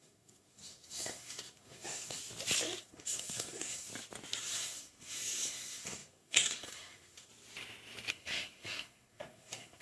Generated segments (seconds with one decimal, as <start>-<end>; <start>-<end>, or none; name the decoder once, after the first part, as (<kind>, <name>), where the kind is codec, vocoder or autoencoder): 0.0-2.2 (codec, SNAC); 2.8-3.9; 4.4-7.3; 8.1-9.8